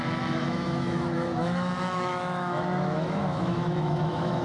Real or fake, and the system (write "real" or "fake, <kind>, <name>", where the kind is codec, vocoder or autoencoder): fake, autoencoder, DAC-VAE